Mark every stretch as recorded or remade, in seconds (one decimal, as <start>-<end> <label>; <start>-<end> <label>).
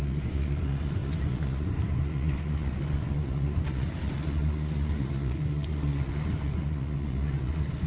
0.0-7.9 remade